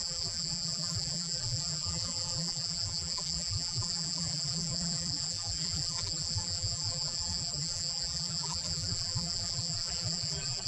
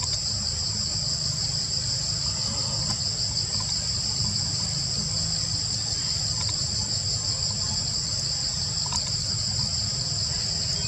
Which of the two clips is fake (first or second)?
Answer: first